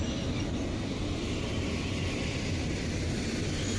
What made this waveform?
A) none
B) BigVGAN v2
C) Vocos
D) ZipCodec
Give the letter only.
A